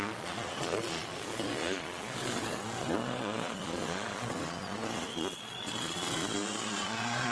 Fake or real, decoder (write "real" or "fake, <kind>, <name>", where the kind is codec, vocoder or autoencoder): fake, vocoder, Vocos